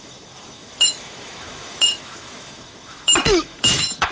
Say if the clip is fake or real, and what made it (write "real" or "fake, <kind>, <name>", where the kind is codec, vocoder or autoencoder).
fake, autoencoder, DAC-VAE